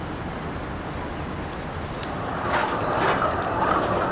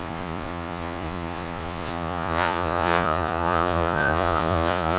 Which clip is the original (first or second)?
first